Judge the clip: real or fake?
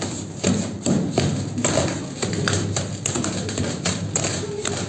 real